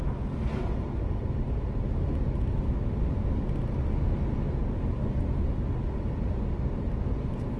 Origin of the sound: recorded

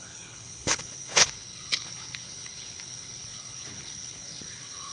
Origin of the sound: remade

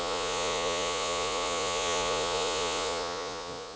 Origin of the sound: remade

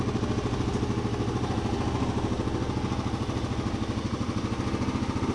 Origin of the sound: recorded